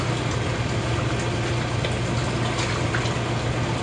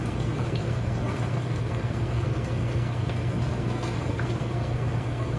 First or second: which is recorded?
first